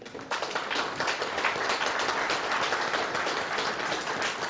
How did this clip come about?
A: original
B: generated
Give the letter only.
A